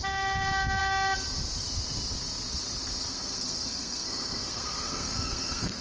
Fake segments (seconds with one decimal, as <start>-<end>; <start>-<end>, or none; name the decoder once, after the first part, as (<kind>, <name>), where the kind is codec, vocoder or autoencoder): 3.1-5.8 (codec, SNAC)

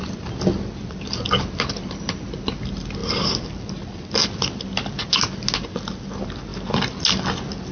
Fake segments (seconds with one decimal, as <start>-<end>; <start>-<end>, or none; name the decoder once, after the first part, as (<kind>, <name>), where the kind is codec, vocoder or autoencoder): none

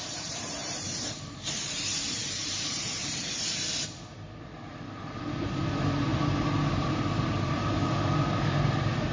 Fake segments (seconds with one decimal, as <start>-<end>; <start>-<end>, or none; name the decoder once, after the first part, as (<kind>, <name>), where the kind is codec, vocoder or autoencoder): 0.0-9.1 (vocoder, BigVGAN v2)

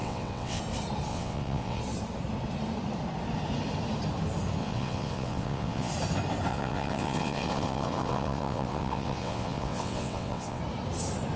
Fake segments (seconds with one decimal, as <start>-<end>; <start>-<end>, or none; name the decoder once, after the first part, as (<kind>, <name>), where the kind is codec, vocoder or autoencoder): 0.0-0.6 (vocoder, WaveNeXt); 1.1-1.8; 4.6-5.9; 6.5-10.6

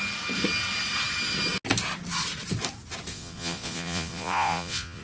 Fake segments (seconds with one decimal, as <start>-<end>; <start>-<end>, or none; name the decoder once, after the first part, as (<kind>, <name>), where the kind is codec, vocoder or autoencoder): 3.1-5.0 (vocoder, Vocos)

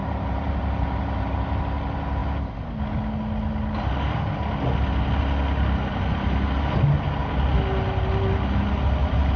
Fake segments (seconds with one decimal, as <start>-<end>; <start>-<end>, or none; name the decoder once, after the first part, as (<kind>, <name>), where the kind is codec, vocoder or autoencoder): 0.0-1.6 (vocoder, BigVGAN v2)